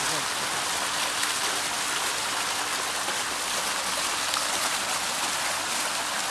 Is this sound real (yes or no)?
yes